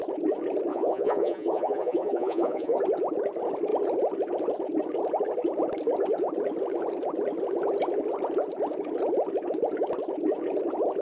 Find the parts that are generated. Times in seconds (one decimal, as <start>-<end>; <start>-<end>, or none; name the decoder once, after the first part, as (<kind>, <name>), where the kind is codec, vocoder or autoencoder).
0.7-2.8 (vocoder, Vocos)